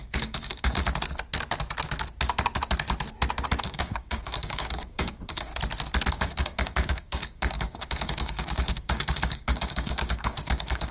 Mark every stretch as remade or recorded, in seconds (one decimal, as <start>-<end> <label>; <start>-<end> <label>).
0.0-0.8 remade; 0.8-3.6 recorded; 3.6-5.5 remade; 5.5-6.1 recorded; 6.1-10.9 remade